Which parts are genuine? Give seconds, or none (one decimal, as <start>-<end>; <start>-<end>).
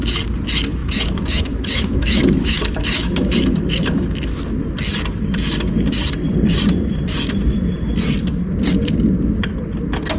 0.0-0.8; 4.4-10.2